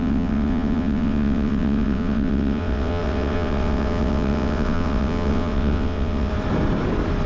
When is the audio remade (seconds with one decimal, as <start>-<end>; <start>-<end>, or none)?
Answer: 0.0-6.3